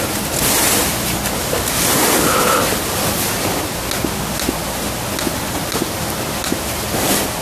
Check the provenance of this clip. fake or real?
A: real